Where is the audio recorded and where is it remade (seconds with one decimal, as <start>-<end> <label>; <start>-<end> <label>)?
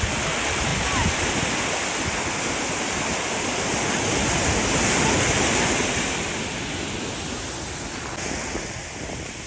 0.0-9.5 recorded